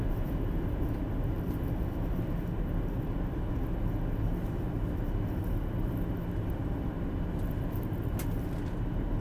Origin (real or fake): real